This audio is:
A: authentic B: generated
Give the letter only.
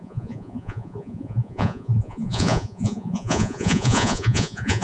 B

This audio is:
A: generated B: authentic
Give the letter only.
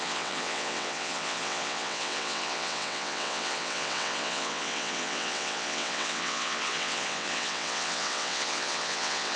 A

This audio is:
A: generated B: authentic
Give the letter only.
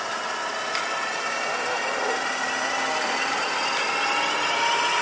B